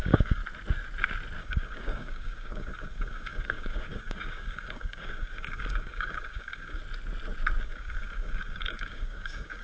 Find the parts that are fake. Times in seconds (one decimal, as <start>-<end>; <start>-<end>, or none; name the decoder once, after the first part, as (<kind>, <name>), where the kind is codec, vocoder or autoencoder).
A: 0.0-0.4 (codec, DAC); 1.4-6.8; 7.6-9.6